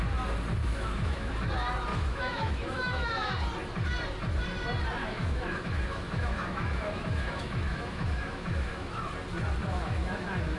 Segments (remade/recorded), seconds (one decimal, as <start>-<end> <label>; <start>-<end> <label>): 0.0-0.6 recorded; 0.6-1.3 remade; 1.3-1.9 recorded; 1.9-3.3 remade; 3.3-5.0 recorded; 5.0-9.0 remade; 9.0-9.6 recorded; 9.6-10.6 remade